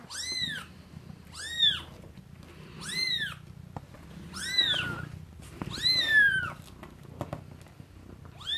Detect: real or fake real